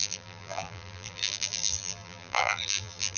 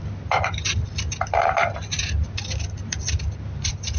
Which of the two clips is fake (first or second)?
first